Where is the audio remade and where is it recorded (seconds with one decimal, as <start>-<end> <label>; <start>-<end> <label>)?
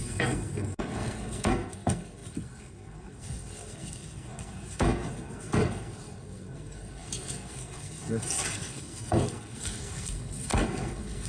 0.0-11.3 remade